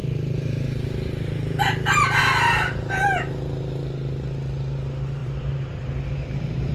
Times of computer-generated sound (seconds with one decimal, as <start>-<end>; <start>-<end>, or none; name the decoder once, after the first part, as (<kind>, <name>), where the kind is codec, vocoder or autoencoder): 0.0-2.2 (vocoder, BigVGAN v2); 5.2-6.7